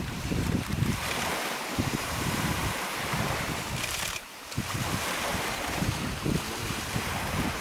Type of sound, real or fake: fake